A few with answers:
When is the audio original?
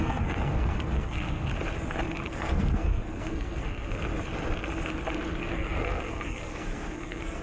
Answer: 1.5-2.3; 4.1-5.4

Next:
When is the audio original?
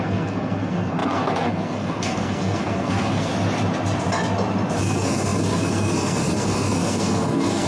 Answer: 3.3-4.8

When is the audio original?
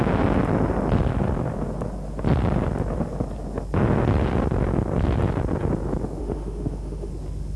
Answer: 0.0-6.2; 7.1-7.6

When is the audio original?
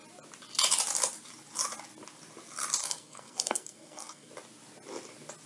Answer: 0.0-2.8; 4.3-5.5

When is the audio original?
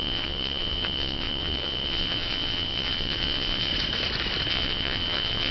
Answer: 3.7-4.5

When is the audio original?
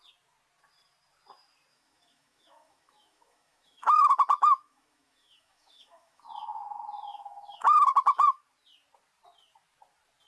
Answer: 0.0-1.7; 6.3-7.1; 8.4-10.3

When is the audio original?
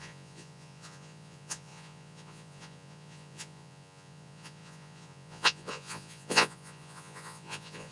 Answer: none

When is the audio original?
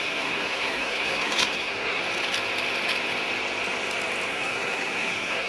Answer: 2.0-4.3